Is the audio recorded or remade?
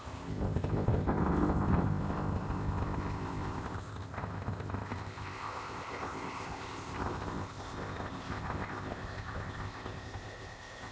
remade